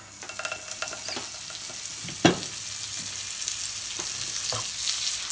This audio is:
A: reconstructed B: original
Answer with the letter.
B